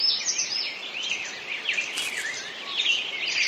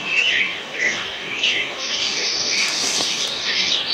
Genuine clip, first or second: first